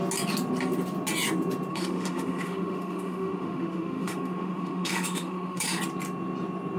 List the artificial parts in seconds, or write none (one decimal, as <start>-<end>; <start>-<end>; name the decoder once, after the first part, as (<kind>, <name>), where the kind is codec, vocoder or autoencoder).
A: 1.7-5.8 (autoencoder, DAC-VAE)

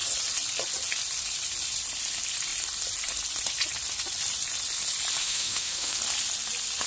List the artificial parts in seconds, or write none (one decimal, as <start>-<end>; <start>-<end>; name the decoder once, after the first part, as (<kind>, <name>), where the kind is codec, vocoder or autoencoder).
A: 5.2-6.0 (autoencoder, DAC-VAE)

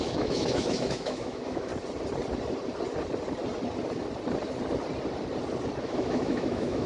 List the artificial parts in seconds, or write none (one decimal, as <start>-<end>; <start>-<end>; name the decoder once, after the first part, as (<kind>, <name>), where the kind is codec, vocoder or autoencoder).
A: 0.0-1.7 (autoencoder, DAC-VAE); 5.8-6.9

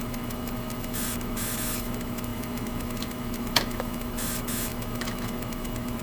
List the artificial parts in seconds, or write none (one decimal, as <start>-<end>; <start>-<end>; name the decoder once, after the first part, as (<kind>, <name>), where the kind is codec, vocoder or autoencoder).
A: 0.0-6.0 (autoencoder, DAC-VAE)

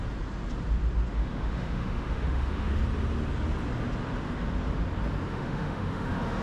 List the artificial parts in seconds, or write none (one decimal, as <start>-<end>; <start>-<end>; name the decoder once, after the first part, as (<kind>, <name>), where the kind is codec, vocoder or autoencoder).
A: 1.1-2.7 (autoencoder, DAC-VAE); 5.3-6.4

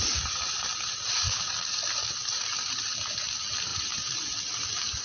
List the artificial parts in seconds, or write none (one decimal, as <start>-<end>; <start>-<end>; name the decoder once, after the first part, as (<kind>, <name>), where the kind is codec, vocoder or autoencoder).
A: none